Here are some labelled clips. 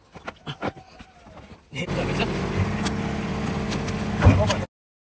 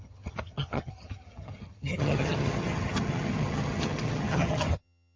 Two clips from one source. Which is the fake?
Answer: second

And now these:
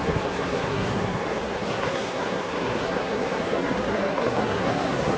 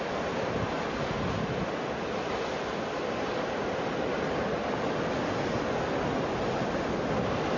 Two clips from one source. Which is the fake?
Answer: first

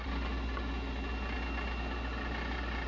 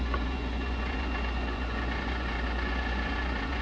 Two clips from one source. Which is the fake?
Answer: second